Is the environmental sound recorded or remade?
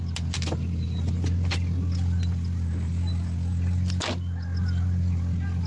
recorded